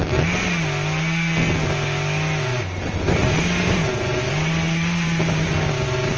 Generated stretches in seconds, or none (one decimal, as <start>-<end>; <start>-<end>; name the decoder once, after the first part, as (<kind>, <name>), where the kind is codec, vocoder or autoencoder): 2.5-5.5 (vocoder, BigVGAN v2)